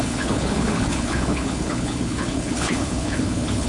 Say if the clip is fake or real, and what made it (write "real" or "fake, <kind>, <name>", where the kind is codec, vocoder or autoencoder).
fake, codec, HILCodec